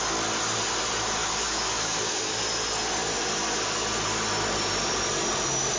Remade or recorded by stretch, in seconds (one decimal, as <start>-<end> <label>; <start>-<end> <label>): 0.0-1.2 recorded; 1.2-2.2 remade; 2.2-5.8 recorded